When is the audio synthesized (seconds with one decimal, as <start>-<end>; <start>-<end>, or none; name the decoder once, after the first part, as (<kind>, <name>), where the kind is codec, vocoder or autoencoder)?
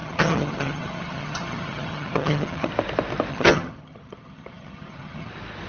0.0-2.7 (vocoder, HiFi-GAN); 3.3-5.3